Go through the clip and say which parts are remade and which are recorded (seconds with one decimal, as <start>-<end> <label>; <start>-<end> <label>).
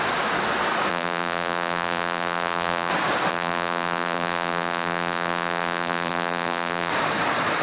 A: 0.0-0.9 recorded; 0.9-2.9 remade; 2.9-3.3 recorded; 3.3-6.9 remade; 6.9-7.6 recorded